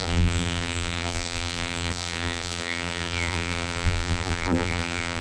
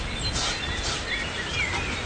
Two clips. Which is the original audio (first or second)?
second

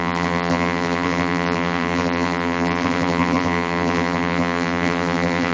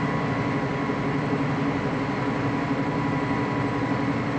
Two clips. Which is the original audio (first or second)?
second